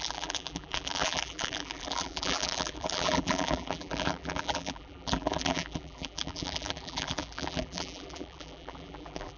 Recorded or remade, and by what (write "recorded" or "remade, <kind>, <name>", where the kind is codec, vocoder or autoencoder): remade, vocoder, BigVGAN v2